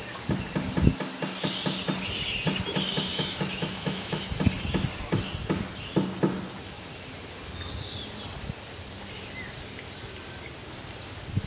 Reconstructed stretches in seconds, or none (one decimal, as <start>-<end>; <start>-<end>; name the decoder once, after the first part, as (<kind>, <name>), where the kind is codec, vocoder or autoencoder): 3.1-4.2 (autoencoder, DAC-VAE)